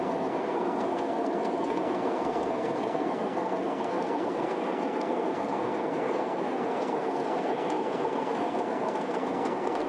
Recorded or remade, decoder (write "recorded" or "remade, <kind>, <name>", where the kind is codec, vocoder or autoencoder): remade, codec, SNAC